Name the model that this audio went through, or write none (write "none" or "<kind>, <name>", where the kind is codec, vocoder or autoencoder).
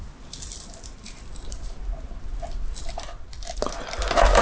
none